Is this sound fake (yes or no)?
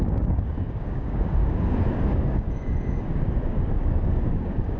yes